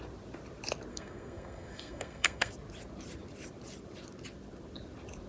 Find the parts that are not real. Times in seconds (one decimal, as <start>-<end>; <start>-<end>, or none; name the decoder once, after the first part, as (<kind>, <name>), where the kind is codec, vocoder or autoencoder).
0.9-2.5 (codec, SNAC)